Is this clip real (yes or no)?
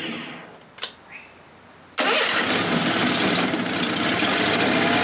yes